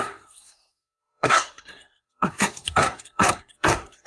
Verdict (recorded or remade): remade